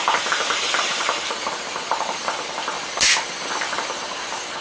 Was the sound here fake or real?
real